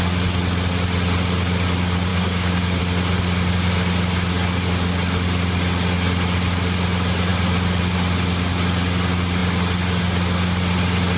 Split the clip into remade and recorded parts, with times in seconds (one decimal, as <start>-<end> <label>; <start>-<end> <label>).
0.0-2.1 recorded; 2.1-2.8 remade; 2.8-11.2 recorded